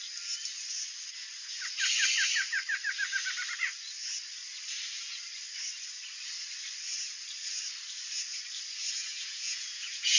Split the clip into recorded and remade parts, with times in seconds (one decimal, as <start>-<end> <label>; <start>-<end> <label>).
0.0-9.0 recorded; 9.0-10.2 remade